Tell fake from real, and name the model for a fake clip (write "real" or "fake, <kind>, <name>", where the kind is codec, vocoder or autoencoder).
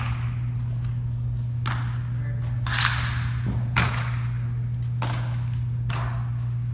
real